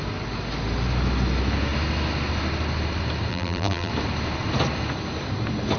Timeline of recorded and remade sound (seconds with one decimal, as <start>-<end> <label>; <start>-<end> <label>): 0.0-3.3 recorded; 3.3-3.9 remade; 3.9-5.8 recorded